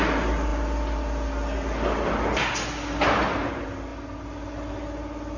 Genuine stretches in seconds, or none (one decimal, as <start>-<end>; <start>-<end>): 0.0-5.4